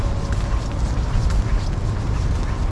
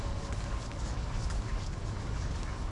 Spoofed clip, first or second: second